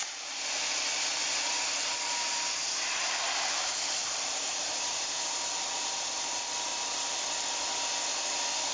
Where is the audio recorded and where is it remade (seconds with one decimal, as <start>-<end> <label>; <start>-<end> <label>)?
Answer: 0.0-6.7 remade; 6.7-8.7 recorded